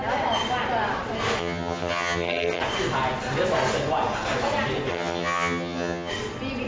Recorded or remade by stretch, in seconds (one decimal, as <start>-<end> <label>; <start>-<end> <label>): 0.0-1.4 recorded; 1.4-2.6 remade; 2.6-4.9 recorded; 4.9-6.1 remade; 6.1-6.7 recorded